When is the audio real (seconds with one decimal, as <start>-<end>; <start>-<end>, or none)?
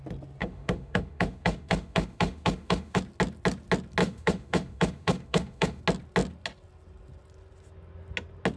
0.0-0.4; 3.0-4.0; 5.8-8.6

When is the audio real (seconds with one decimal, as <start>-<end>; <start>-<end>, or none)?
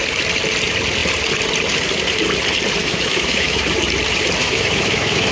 0.0-2.8; 3.6-4.4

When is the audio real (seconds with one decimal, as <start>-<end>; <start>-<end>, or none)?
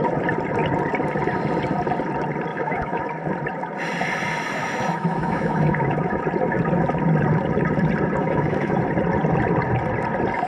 0.0-2.5; 3.0-4.6; 6.2-8.2; 8.8-10.5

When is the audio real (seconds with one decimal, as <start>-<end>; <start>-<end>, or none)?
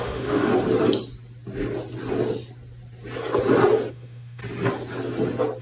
0.5-3.9; 4.4-5.6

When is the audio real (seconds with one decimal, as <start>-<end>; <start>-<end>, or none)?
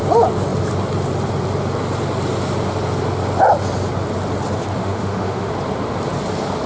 0.0-4.8; 5.5-6.7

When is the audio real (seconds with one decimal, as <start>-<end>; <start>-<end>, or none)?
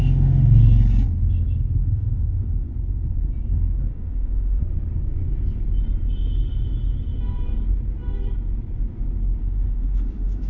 0.6-1.8; 2.7-3.9; 4.6-9.4